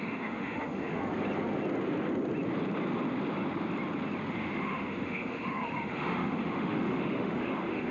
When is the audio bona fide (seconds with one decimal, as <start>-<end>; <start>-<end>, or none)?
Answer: 1.0-4.3